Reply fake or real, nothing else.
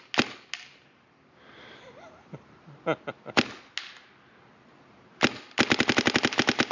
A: real